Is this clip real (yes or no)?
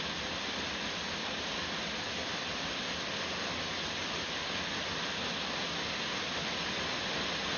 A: yes